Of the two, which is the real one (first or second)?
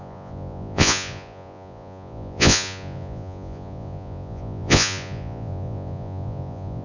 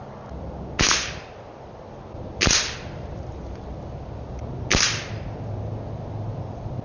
second